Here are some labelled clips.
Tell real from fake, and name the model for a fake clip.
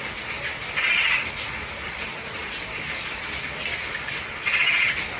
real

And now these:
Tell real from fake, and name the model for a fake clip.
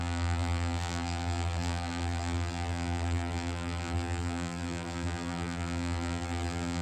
fake, vocoder, BigVGAN v2